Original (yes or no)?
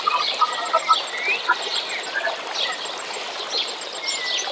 yes